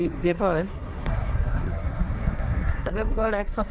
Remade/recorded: remade